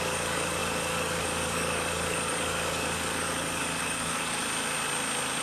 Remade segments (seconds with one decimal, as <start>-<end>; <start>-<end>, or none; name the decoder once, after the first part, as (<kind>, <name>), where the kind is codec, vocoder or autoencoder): 0.0-4.4 (codec, DAC)